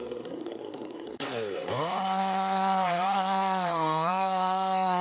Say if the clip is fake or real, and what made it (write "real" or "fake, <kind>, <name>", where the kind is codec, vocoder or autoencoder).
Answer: fake, codec, SNAC